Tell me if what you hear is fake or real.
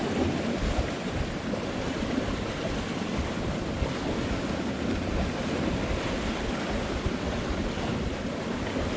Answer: real